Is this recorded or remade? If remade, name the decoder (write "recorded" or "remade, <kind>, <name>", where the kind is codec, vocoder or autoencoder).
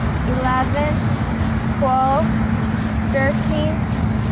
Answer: recorded